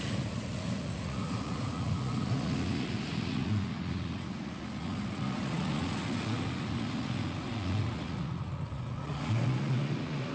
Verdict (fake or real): fake